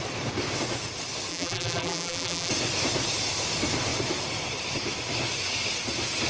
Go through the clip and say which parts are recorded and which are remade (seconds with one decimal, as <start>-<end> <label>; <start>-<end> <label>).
0.0-1.3 recorded; 1.3-2.5 remade; 2.5-6.3 recorded